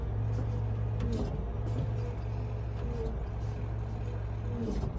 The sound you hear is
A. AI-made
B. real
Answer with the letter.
B